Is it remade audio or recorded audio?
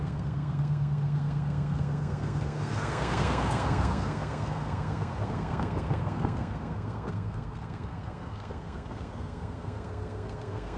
remade